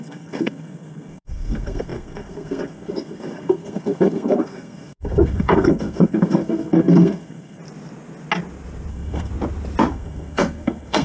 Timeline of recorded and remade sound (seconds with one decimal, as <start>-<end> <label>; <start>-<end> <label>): 0.0-7.6 remade; 7.6-8.9 recorded; 8.9-9.3 remade; 9.3-9.9 recorded; 9.9-11.0 remade